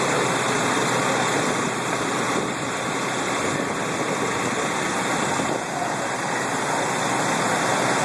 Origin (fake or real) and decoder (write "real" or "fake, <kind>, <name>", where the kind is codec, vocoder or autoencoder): fake, vocoder, BigVGAN v2